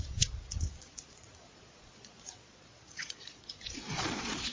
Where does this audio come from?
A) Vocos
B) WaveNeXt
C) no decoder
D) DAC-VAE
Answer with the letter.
A